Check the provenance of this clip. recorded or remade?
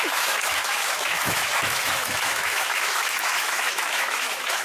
remade